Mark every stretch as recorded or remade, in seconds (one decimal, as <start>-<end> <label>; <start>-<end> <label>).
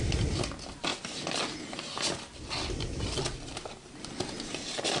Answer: 0.0-5.0 recorded